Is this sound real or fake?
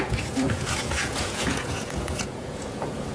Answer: fake